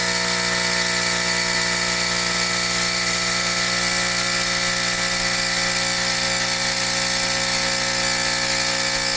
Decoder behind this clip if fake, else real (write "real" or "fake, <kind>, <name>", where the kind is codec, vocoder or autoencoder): real